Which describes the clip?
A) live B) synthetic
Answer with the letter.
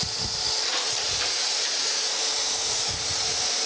B